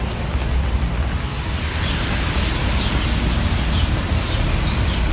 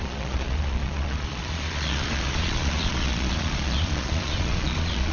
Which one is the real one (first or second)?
first